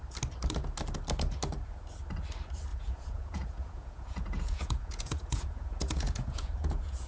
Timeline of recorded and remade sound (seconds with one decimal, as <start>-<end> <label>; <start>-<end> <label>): 0.0-2.7 recorded; 2.7-7.1 remade

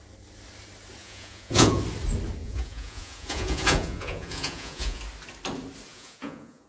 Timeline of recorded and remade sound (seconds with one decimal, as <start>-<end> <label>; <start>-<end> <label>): 0.0-1.0 recorded; 1.0-1.8 remade; 1.8-2.4 recorded; 2.4-5.0 remade; 5.0-5.9 recorded; 5.9-6.7 remade